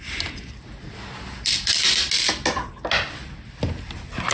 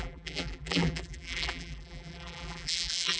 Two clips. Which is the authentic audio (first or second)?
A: first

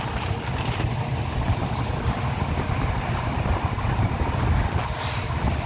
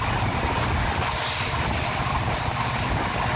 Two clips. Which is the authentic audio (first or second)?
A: second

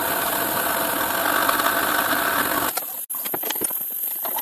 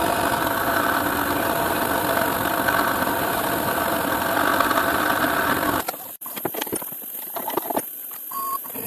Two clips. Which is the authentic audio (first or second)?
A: first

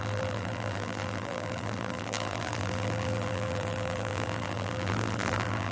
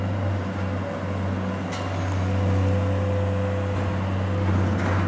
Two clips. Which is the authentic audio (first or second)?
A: second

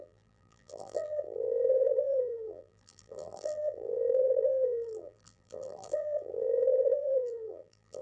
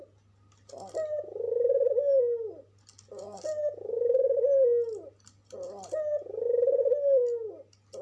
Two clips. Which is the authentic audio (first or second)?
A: second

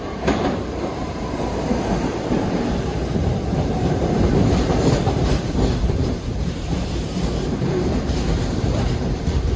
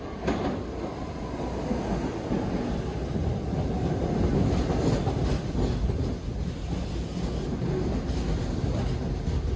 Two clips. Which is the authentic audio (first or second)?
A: second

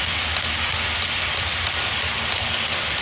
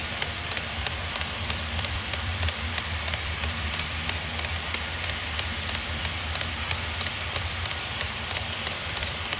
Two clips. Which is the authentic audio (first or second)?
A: first